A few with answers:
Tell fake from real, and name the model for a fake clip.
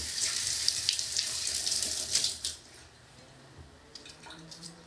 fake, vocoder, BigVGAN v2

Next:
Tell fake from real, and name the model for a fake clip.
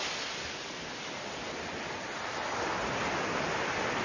real